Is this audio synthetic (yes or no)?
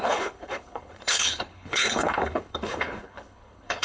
yes